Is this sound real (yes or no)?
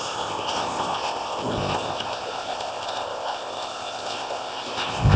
no